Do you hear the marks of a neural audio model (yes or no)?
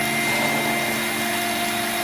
no